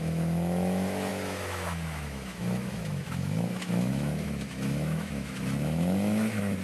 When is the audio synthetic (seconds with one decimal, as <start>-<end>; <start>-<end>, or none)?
0.0-6.6